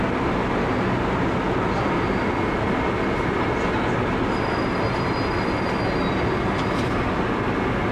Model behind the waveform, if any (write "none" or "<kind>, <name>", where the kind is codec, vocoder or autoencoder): none